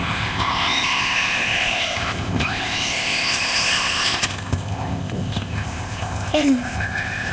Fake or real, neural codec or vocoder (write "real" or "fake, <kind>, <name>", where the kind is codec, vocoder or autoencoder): fake, codec, ZipCodec